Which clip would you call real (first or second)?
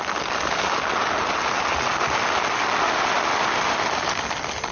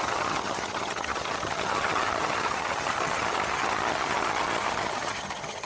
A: first